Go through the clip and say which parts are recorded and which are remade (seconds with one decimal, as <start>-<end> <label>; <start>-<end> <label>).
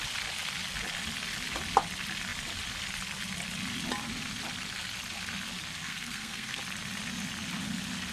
0.0-5.8 recorded; 5.8-6.6 remade; 6.6-8.1 recorded